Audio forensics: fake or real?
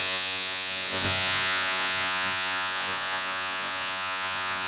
fake